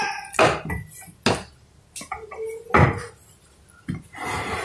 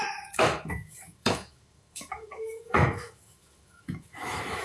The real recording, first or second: first